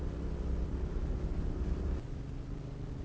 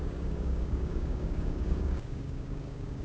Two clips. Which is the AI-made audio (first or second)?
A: second